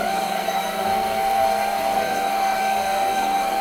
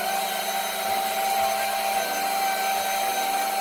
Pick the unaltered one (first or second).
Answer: second